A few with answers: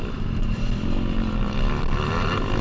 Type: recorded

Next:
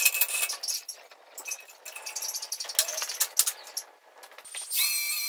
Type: recorded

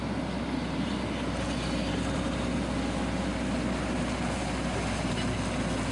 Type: recorded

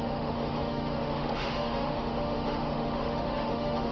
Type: remade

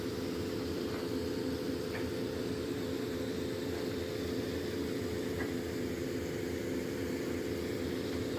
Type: recorded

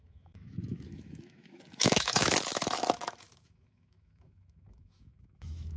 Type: remade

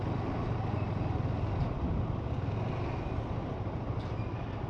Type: recorded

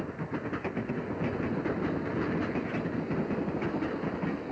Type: recorded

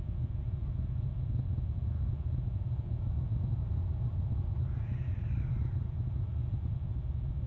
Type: recorded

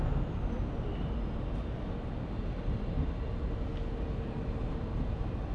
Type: recorded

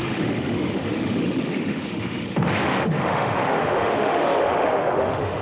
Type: remade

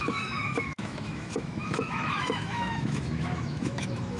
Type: remade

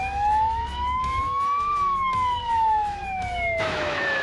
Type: remade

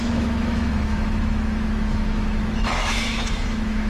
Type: remade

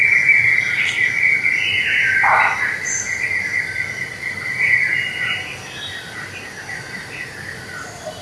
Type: recorded